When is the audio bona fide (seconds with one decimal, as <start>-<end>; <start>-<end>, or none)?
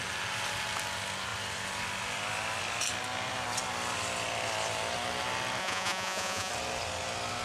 0.0-5.6; 6.5-7.4